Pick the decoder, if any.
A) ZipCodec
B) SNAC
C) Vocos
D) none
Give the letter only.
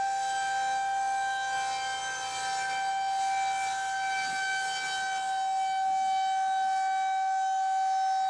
D